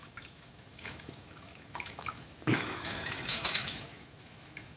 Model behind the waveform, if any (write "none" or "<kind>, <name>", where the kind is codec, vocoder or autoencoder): autoencoder, DAC-VAE